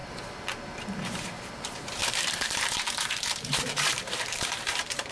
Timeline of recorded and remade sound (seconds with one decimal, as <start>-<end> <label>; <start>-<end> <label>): 0.0-1.5 recorded; 1.5-5.1 remade